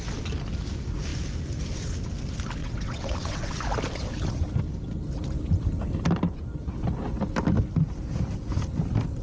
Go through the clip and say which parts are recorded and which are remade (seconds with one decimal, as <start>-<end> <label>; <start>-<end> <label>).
0.0-2.6 recorded; 2.6-3.6 remade; 3.6-9.2 recorded